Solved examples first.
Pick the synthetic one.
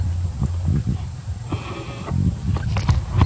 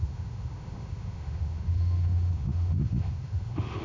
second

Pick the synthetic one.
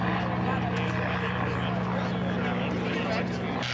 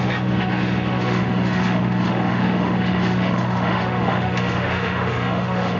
second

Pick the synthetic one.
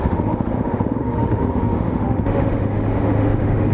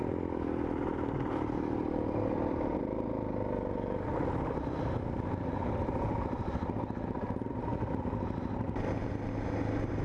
first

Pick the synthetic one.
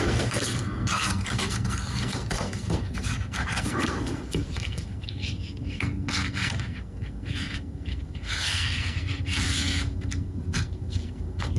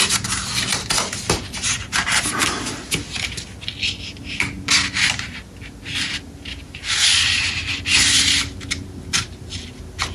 first